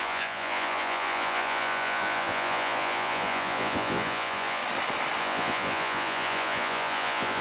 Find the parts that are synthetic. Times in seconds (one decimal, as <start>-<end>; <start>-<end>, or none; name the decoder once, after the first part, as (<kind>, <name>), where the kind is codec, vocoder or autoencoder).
0.0-4.6 (vocoder, Vocos); 5.2-7.4